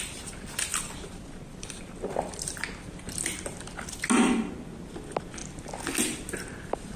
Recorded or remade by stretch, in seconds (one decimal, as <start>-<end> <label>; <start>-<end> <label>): 0.0-7.0 recorded